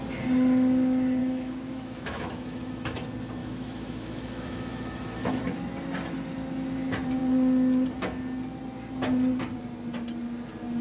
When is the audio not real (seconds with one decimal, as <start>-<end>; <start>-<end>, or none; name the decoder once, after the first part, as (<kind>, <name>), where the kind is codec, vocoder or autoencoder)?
1.2-2.7 (autoencoder, DAC-VAE); 3.4-5.4